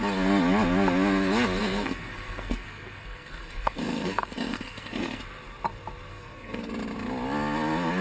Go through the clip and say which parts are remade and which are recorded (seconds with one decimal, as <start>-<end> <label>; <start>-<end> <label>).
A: 0.0-1.6 recorded; 1.6-5.2 remade; 5.2-6.1 recorded; 6.1-6.7 remade; 6.7-8.0 recorded